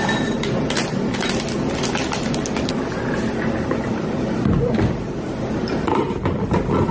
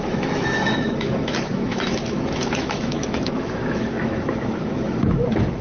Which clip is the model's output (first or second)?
second